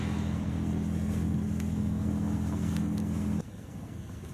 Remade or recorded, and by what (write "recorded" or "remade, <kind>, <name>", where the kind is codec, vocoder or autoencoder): remade, codec, SNAC